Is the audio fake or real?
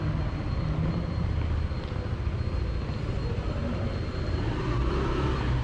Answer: real